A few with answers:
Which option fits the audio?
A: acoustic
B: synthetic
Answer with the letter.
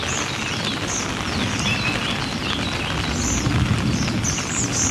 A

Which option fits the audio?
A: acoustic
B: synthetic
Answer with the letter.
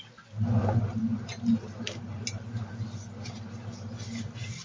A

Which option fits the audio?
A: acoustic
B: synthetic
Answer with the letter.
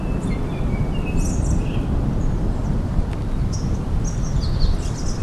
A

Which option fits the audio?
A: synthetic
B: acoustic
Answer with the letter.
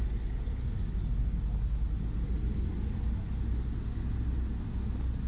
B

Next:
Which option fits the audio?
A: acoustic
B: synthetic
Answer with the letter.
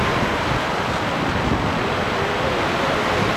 A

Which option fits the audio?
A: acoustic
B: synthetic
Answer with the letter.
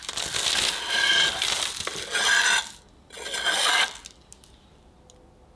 A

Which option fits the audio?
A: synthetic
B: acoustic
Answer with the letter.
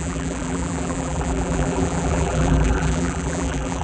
A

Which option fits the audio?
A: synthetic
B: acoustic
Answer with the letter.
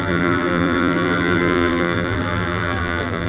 A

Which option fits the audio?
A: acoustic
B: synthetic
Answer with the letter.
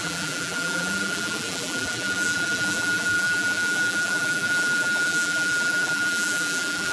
B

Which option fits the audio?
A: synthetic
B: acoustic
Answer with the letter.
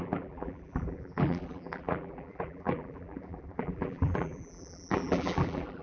A